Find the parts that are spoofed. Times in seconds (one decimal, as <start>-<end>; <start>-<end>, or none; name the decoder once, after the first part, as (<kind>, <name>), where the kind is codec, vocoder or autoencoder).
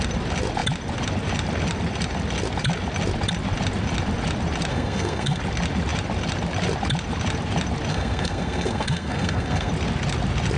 4.7-5.4 (codec, SNAC); 7.9-9.7